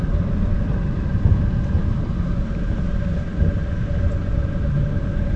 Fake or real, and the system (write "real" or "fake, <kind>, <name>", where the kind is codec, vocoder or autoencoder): real